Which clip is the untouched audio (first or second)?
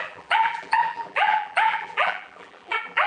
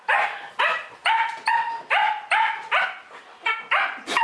second